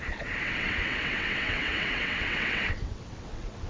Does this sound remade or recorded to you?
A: remade